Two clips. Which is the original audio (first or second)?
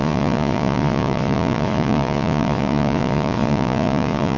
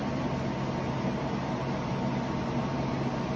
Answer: second